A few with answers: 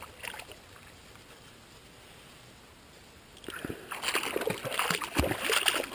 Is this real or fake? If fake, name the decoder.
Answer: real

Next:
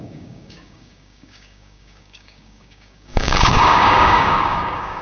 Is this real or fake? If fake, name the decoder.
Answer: fake, codec, DAC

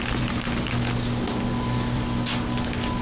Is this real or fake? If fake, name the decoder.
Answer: real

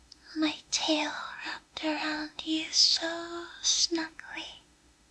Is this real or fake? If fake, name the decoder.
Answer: fake, autoencoder, DAC-VAE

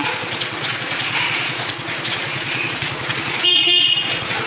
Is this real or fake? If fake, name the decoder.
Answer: fake, vocoder, Vocos